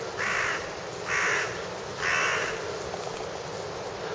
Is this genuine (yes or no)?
yes